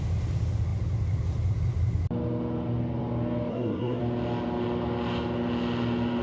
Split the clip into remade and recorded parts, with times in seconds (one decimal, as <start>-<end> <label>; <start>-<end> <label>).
0.0-3.5 recorded; 3.5-4.0 remade; 4.0-6.2 recorded